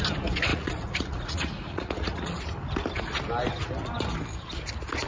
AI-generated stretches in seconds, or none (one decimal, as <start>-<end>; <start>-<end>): 0.5-2.4